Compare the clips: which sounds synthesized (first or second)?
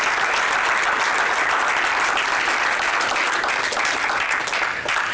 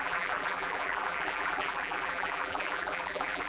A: second